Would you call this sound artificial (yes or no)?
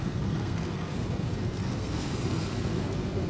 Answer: yes